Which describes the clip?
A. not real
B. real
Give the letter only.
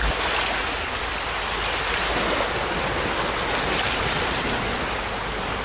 B